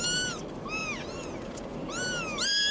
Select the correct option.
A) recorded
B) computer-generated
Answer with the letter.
A